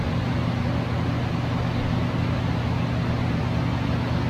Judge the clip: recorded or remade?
recorded